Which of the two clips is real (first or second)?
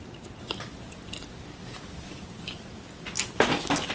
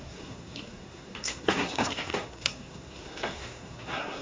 first